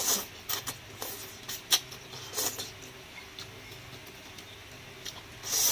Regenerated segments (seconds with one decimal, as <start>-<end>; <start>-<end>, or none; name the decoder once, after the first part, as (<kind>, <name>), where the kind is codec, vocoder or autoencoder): none